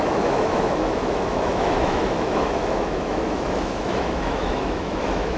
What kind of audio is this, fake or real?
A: fake